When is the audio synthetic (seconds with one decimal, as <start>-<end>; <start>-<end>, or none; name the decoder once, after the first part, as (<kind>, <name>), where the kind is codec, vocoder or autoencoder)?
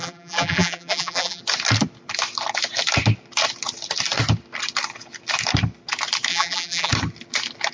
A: 0.0-1.4 (vocoder, BigVGAN v2); 6.3-6.9